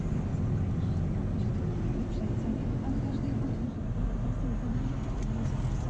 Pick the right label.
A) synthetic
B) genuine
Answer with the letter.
B